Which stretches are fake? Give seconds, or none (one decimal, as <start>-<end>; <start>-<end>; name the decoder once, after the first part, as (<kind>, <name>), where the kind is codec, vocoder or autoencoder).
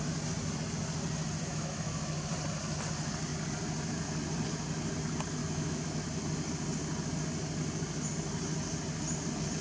1.5-2.3 (autoencoder, DAC-VAE); 5.4-6.0